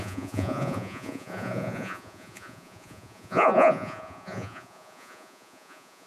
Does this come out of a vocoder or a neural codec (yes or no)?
yes